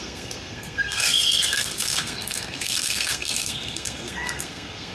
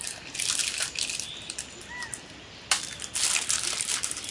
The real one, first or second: second